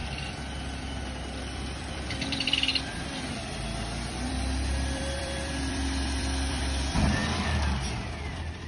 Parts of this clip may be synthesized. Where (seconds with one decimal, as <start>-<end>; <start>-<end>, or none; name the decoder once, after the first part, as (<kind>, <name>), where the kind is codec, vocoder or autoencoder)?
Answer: 0.0-2.7 (vocoder, BigVGAN v2); 3.3-7.2